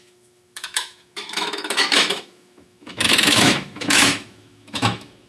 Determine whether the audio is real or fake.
fake